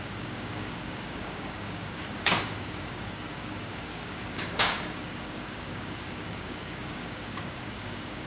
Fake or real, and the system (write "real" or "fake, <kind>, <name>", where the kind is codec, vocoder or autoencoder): fake, codec, DAC